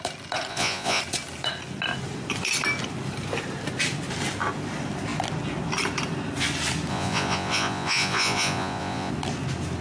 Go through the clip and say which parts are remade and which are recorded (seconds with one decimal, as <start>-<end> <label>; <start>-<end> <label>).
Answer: 0.0-0.5 recorded; 0.5-1.0 remade; 1.0-6.9 recorded; 6.9-9.1 remade; 9.1-9.8 recorded